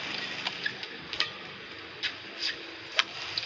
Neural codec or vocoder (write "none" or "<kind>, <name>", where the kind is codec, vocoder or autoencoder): none